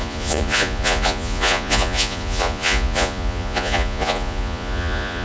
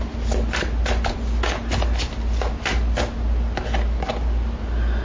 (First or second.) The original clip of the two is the second